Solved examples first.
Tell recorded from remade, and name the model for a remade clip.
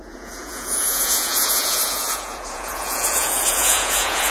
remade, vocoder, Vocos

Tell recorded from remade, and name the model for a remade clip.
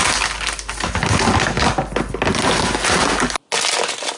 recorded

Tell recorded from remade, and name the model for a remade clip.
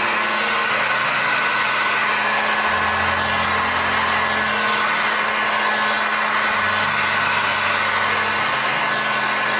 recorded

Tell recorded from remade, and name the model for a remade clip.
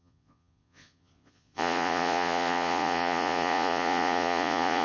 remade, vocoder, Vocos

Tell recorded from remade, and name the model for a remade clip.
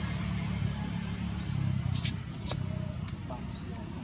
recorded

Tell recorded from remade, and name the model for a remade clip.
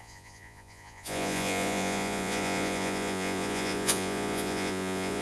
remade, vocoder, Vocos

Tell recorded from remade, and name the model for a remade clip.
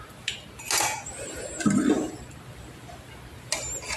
recorded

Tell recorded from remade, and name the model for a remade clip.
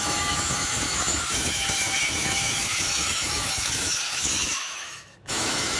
remade, autoencoder, DAC-VAE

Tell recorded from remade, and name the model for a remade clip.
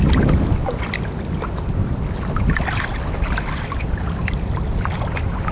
recorded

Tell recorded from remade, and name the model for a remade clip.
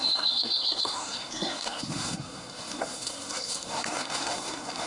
remade, codec, SNAC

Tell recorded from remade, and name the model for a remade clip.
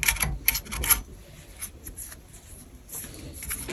recorded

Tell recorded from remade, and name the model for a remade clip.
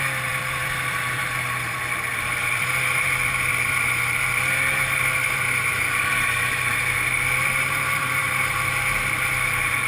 remade, vocoder, BigVGAN v2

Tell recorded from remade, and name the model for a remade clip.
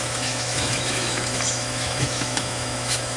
remade, autoencoder, DAC-VAE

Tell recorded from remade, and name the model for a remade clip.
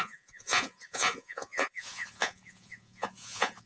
remade, vocoder, Vocos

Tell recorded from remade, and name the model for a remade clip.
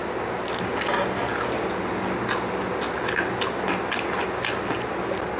recorded